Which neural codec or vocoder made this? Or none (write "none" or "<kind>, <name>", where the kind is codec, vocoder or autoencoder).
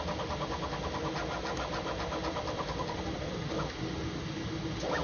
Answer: none